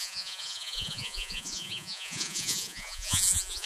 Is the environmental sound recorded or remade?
remade